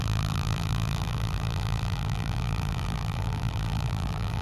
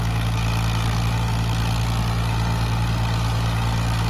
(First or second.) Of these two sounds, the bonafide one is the second